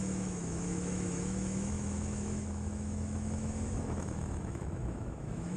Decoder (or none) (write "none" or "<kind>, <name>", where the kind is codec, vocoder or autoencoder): autoencoder, DAC-VAE